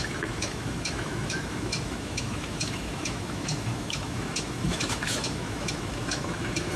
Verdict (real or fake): fake